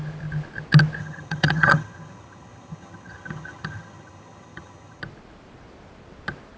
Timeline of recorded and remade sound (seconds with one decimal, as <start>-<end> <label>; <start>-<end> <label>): 0.0-1.0 recorded; 1.0-5.0 remade; 5.0-6.6 recorded